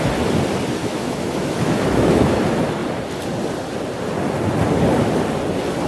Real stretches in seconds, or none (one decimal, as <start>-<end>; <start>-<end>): 0.0-0.8; 2.4-5.9